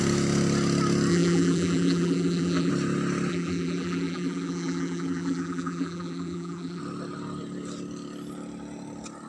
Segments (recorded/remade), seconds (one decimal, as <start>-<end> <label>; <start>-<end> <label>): 0.0-1.1 recorded; 1.1-2.7 remade; 2.7-3.3 recorded; 3.3-6.8 remade; 6.8-9.3 recorded